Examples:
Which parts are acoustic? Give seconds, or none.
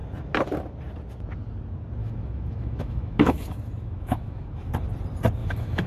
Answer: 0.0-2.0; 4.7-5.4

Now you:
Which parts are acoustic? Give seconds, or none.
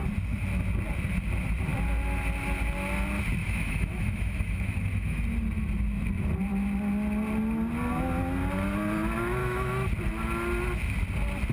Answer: 0.0-3.4; 5.2-9.4; 9.9-11.5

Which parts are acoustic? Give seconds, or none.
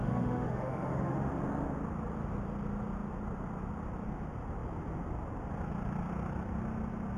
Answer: 1.3-7.2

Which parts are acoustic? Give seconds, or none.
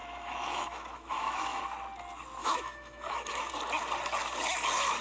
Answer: 1.6-2.4; 3.5-5.0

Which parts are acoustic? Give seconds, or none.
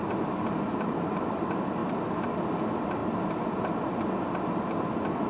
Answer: 0.0-5.3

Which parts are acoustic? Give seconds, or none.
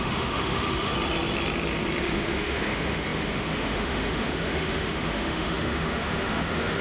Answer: 0.9-2.0